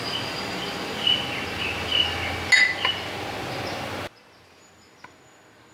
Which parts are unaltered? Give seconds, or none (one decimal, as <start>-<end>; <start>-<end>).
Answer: 0.0-5.7